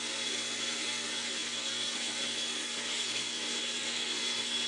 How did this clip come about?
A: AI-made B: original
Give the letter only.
A